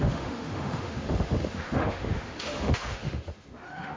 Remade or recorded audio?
remade